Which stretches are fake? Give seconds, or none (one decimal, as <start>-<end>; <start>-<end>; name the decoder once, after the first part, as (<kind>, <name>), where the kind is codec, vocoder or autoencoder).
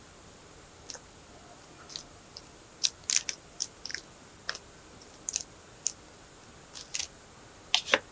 none